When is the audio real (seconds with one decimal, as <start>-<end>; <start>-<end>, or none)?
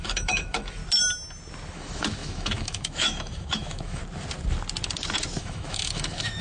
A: 0.8-1.7; 4.0-5.4